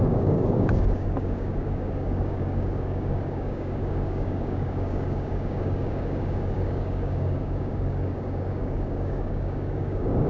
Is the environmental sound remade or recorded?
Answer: remade